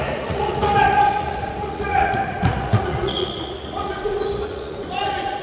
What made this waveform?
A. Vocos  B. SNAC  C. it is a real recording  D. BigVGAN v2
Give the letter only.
A